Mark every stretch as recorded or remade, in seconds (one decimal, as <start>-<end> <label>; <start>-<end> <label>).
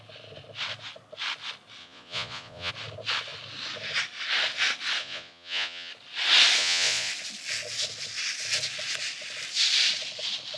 0.0-1.8 recorded; 1.8-2.7 remade; 2.7-5.0 recorded; 5.0-5.9 remade; 5.9-6.6 recorded; 6.6-7.1 remade; 7.1-10.6 recorded